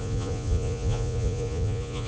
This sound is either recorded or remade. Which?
remade